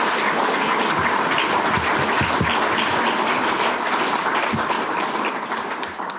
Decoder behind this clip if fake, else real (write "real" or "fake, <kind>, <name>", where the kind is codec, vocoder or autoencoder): real